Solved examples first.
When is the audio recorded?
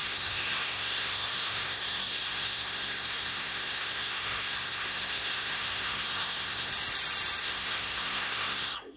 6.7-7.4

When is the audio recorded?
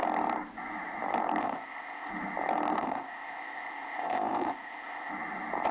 0.0-1.4; 2.1-2.8; 5.1-5.7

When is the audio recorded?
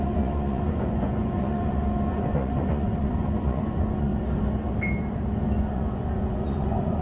4.1-5.6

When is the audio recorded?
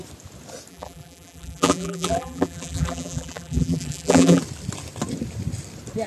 0.0-0.7; 4.4-6.1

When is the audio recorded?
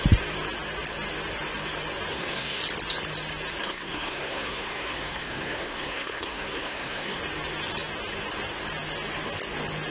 0.0-2.1; 2.6-3.6; 7.2-9.9